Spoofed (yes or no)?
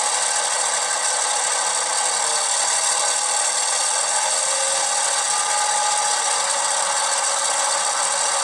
no